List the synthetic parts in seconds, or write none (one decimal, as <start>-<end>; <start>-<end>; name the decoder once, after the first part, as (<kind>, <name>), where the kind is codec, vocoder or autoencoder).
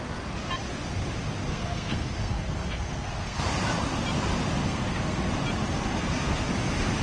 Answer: 1.4-3.4 (codec, SNAC); 4.6-5.3; 6.0-6.5